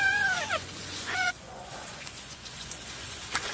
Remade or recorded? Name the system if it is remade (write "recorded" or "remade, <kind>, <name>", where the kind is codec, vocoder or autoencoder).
remade, vocoder, Vocos